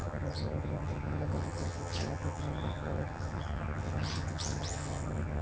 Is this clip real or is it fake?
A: fake